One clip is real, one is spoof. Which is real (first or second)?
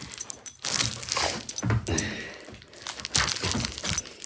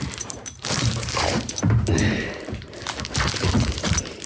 first